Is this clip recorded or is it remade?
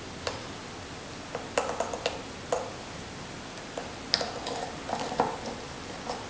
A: recorded